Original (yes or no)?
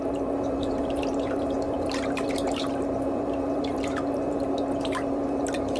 no